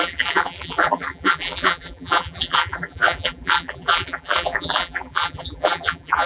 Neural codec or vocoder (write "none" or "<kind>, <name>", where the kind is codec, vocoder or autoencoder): vocoder, BigVGAN v2